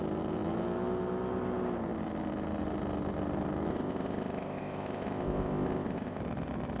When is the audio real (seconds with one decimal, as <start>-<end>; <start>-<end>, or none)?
0.0-3.7; 6.2-6.8